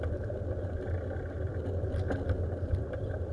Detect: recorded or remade recorded